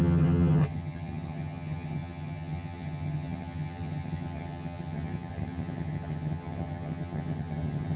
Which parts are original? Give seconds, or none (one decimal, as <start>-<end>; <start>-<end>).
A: none